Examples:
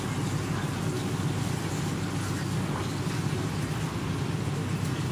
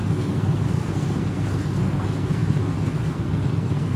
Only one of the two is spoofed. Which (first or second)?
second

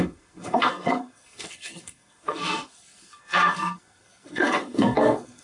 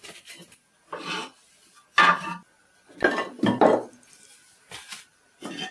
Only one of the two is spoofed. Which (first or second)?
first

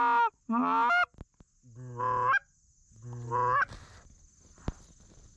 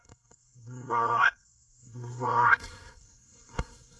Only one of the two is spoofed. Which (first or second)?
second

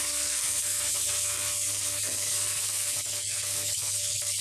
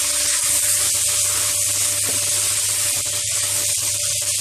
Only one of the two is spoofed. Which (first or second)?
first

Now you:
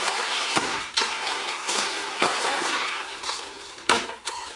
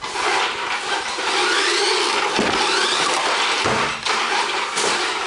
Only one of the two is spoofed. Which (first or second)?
first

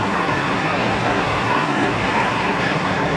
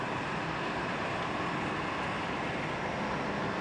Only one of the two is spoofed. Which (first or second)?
first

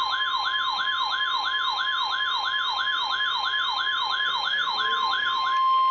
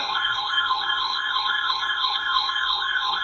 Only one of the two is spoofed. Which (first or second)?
second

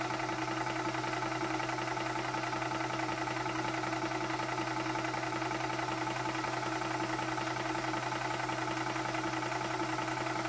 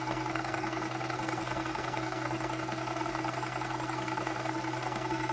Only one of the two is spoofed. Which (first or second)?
second